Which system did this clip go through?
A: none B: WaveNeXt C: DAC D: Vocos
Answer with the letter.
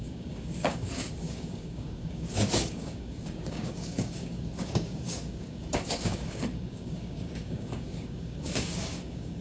C